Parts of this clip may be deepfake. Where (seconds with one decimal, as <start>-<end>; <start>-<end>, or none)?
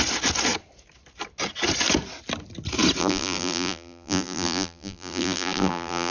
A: 3.0-6.1